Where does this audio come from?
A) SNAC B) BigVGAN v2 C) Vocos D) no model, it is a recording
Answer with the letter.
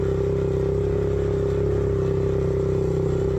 D